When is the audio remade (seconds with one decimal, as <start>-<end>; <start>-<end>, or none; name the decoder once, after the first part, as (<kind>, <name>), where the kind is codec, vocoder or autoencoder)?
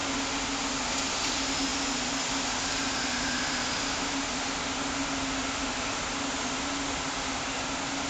none